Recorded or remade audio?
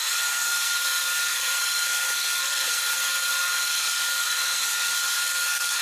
remade